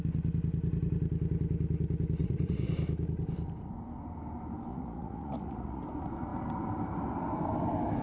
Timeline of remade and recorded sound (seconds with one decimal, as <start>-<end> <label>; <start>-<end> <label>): 0.0-2.2 recorded; 2.2-2.7 remade; 2.7-4.7 recorded; 4.7-5.8 remade; 5.8-8.0 recorded